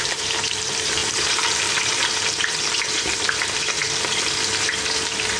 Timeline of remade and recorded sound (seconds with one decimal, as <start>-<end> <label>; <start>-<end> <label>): 0.0-3.8 remade; 3.8-5.0 recorded; 5.0-5.4 remade